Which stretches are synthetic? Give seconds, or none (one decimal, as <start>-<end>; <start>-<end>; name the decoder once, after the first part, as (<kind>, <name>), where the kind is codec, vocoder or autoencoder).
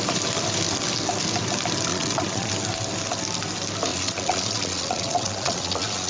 1.9-2.5 (vocoder, Vocos); 3.9-6.1